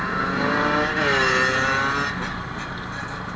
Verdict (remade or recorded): recorded